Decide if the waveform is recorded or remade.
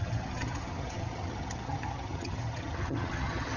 remade